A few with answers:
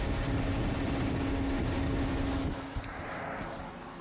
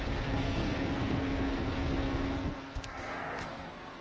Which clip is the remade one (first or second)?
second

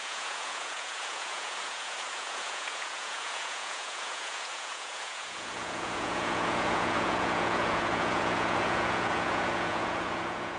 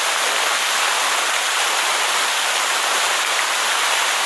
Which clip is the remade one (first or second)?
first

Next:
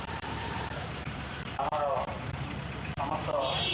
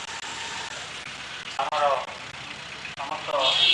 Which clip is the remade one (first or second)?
first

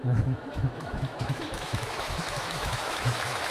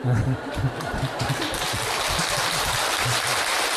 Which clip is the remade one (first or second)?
first